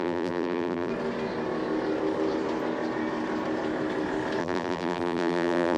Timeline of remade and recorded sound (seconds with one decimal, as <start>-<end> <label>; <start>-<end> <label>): 0.0-0.9 remade; 0.9-4.4 recorded; 4.4-5.8 remade